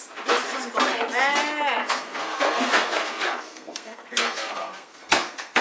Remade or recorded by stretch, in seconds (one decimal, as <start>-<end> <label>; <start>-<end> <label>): 0.0-1.8 recorded; 1.8-5.6 remade